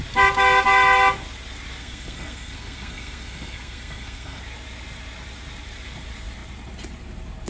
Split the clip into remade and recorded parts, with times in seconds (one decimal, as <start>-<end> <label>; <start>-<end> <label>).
0.0-1.8 recorded; 1.8-4.4 remade; 4.4-7.5 recorded